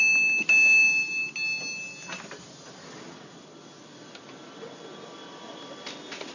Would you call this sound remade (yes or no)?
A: no